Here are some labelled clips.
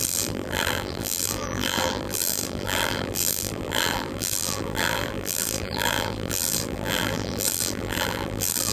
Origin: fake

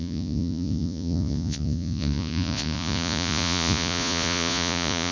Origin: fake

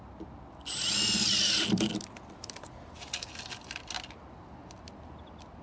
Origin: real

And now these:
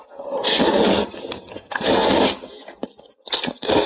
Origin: real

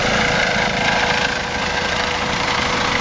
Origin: real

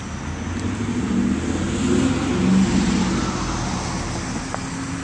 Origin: real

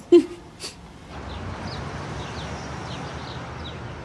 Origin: real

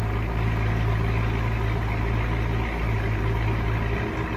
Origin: real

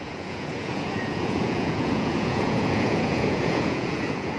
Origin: fake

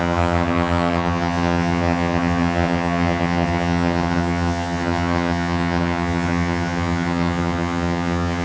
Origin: fake